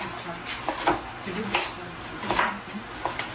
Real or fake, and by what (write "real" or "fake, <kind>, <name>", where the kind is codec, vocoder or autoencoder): real